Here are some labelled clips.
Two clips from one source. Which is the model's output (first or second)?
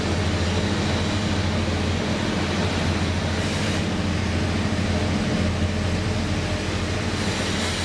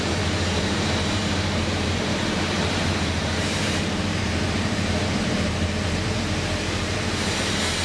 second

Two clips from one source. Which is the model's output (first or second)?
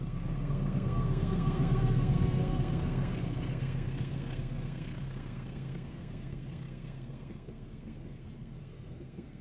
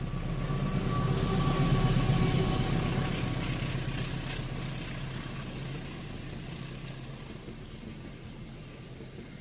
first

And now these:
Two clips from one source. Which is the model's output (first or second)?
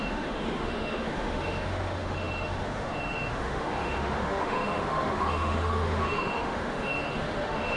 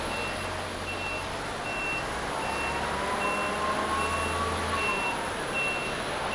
first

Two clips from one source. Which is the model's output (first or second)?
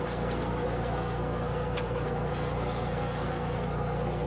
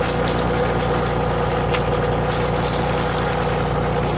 first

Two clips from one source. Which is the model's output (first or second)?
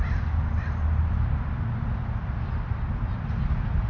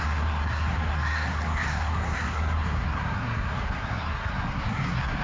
second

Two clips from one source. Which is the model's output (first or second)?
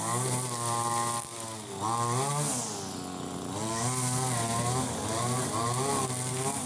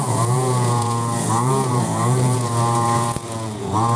second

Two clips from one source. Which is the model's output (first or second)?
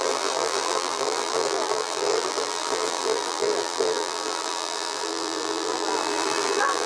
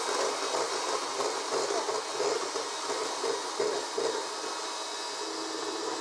first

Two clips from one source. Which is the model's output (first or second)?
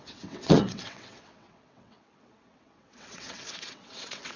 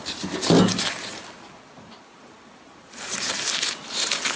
first